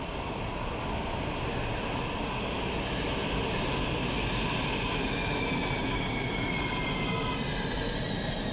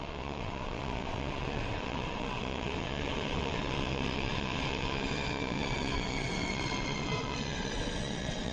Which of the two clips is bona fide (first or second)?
first